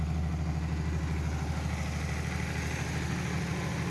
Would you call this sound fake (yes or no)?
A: no